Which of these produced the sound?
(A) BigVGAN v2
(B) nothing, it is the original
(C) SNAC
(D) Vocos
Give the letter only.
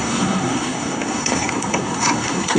C